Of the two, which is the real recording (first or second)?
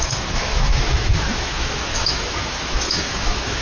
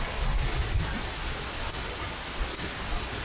second